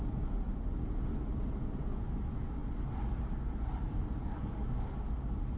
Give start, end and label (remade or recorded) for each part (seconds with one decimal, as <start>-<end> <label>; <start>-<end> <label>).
0.0-4.2 recorded; 4.2-4.9 remade; 4.9-5.6 recorded